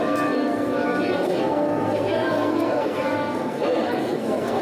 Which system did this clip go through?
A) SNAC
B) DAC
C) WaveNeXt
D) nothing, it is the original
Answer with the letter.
A